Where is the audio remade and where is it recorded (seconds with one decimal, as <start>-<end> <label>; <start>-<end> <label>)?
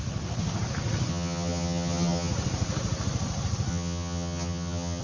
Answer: 0.0-1.1 recorded; 1.1-2.3 remade; 2.3-3.7 recorded; 3.7-5.0 remade